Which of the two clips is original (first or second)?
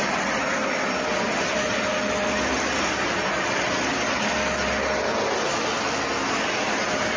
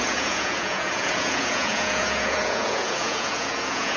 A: first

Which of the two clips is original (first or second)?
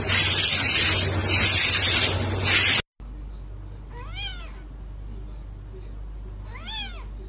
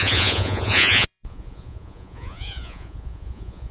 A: first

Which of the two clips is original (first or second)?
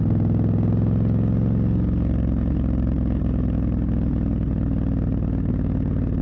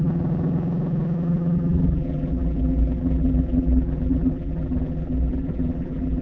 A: first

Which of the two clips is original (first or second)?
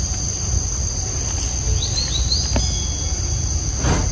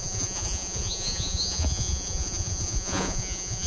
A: first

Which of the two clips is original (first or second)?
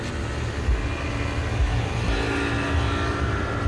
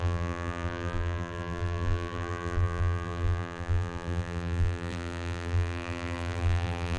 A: first